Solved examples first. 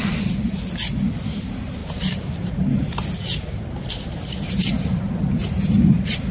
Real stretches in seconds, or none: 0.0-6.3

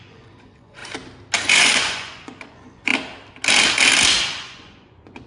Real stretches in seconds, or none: 0.8-1.5; 2.9-4.2

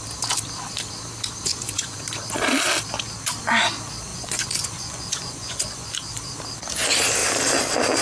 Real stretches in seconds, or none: 0.0-1.5; 2.0-4.1; 5.9-8.0